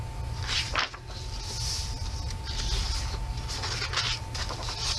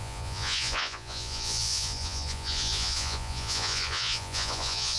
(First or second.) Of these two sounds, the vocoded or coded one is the second